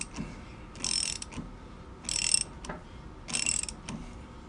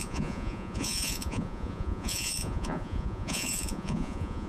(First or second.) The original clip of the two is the first